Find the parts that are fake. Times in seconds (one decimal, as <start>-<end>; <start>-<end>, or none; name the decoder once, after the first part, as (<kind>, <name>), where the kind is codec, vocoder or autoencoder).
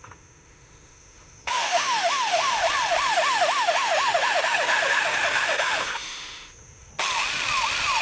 0.0-2.5 (autoencoder, DAC-VAE); 3.1-6.9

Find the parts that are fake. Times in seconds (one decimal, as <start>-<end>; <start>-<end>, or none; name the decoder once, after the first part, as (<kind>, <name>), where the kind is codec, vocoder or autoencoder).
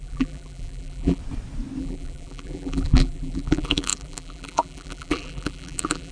0.0-1.2 (vocoder, BigVGAN v2); 1.8-6.1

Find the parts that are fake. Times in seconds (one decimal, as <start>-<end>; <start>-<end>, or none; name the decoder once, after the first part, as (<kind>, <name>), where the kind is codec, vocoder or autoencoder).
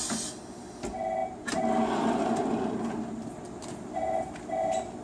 none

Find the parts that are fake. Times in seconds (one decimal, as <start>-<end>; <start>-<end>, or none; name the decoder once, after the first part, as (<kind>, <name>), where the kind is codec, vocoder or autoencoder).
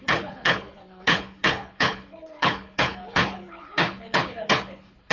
0.0-5.1 (codec, HILCodec)